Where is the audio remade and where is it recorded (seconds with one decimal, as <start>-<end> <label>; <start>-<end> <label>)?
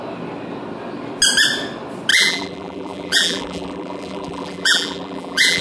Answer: 0.0-2.1 recorded; 2.1-5.6 remade